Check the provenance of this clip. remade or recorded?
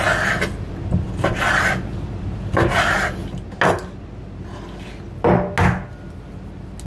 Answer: recorded